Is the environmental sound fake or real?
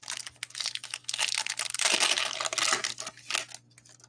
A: real